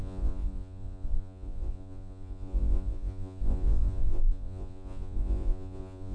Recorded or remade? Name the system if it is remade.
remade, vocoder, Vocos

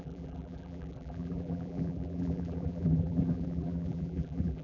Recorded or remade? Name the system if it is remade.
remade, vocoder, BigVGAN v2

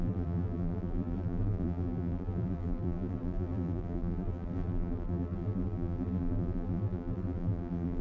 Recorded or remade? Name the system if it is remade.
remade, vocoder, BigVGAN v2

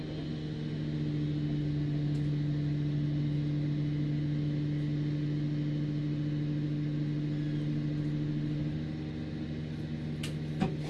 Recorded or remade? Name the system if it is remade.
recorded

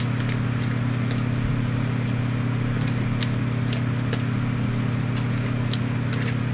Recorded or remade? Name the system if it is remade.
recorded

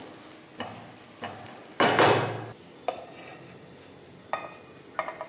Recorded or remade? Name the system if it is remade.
recorded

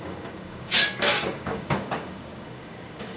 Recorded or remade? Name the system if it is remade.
remade, codec, DAC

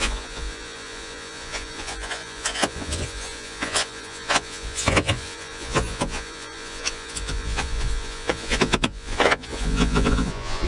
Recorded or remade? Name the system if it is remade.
remade, vocoder, Vocos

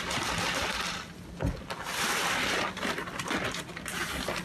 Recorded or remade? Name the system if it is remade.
remade, vocoder, BigVGAN v2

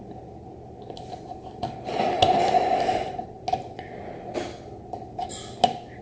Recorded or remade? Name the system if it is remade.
recorded